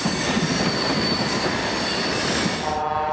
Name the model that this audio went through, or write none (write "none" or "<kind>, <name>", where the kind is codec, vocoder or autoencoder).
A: none